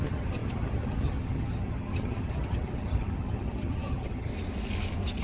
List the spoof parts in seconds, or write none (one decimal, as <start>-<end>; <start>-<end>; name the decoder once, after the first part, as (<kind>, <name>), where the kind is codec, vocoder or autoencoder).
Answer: 0.0-4.3 (vocoder, HiFi-GAN)